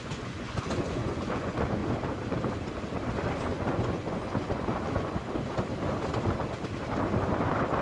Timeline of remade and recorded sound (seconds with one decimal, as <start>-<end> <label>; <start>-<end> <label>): 0.0-1.8 remade; 1.8-3.4 recorded; 3.4-5.2 remade; 5.2-7.8 recorded